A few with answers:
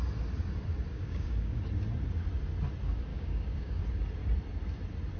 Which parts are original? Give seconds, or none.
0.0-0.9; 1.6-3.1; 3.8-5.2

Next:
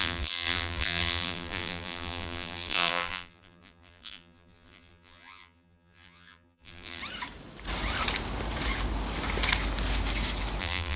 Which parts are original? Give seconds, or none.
7.0-10.6